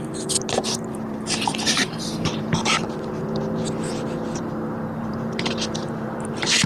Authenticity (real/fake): fake